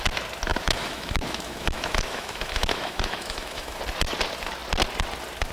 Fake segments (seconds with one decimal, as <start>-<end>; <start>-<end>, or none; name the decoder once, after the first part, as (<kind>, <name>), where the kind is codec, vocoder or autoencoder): 0.5-3.8 (autoencoder, DAC-VAE)

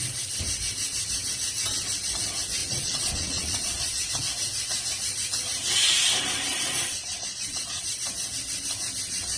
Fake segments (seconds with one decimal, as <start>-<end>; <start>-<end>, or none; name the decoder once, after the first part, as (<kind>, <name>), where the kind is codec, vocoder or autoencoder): 2.6-4.1 (vocoder, Vocos); 6.5-7.8

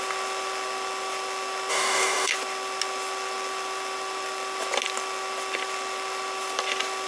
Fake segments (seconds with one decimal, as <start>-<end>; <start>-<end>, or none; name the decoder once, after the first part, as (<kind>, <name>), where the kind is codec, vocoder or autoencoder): 1.7-2.3 (codec, DAC)

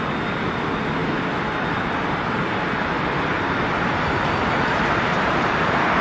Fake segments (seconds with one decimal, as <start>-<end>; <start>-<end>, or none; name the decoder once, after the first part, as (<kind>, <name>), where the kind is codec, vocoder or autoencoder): none